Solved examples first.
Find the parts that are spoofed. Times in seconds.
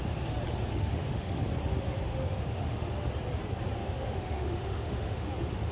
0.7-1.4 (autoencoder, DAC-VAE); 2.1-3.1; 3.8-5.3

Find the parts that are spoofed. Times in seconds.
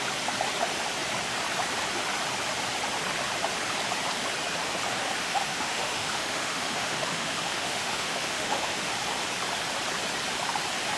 5.2-8.9 (autoencoder, DAC-VAE)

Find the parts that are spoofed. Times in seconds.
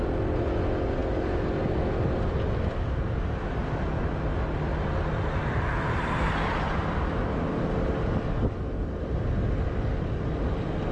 none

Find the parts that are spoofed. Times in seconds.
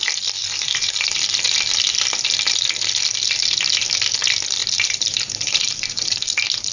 0.4-1.4 (vocoder, BigVGAN v2); 4.6-6.2